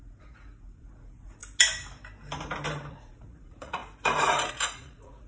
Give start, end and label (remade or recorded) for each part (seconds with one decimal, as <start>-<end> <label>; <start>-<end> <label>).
0.0-1.4 remade; 1.4-2.9 recorded; 2.9-3.8 remade; 3.8-4.5 recorded; 4.5-5.3 remade